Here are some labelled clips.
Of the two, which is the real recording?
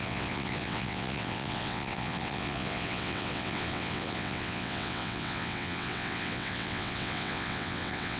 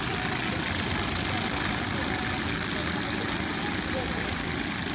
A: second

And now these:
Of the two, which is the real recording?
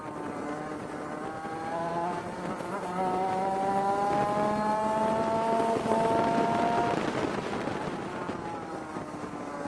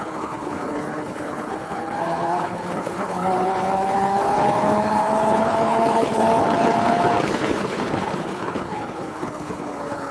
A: first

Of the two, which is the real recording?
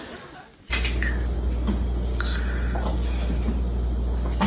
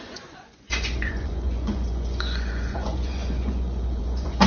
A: first